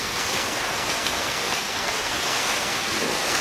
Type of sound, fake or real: fake